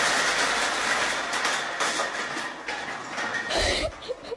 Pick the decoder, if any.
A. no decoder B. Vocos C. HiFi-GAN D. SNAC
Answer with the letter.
A